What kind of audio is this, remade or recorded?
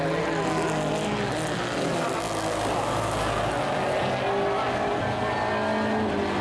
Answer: recorded